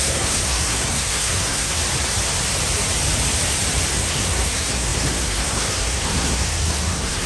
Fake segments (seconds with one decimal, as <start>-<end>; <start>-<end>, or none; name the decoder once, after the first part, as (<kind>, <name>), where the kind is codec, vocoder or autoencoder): 0.0-1.8 (codec, SNAC); 3.9-7.3

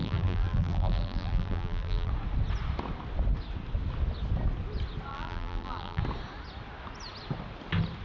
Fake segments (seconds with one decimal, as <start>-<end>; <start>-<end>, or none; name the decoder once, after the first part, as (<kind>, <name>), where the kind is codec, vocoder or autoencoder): 0.0-2.1 (vocoder, BigVGAN v2); 5.1-6.0

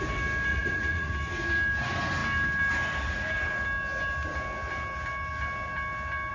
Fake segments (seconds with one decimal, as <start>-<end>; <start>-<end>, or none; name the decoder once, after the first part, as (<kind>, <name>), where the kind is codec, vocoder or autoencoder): 0.5-1.1 (vocoder, Vocos)